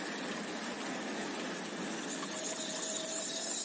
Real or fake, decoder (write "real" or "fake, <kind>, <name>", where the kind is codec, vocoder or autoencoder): real